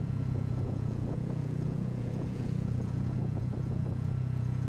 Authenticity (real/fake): fake